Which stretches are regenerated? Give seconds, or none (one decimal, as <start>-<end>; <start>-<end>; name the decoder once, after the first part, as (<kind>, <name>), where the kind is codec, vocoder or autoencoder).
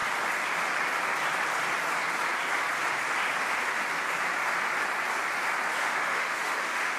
5.8-7.0 (autoencoder, DAC-VAE)